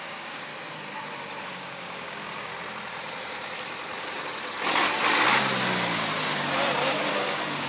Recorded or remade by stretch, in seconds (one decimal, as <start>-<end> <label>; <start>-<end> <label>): 0.0-0.5 remade; 0.5-1.4 recorded; 1.4-2.5 remade; 2.5-7.1 recorded; 7.1-7.7 remade